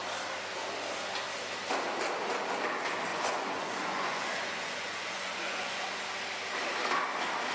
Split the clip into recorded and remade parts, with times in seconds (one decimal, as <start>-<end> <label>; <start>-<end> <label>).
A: 0.0-3.1 recorded; 3.1-5.9 remade; 5.9-7.5 recorded